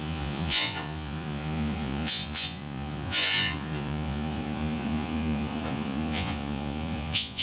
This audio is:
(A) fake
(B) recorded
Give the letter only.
A